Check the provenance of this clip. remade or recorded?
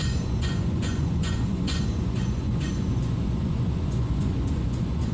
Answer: remade